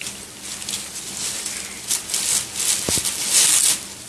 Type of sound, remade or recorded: recorded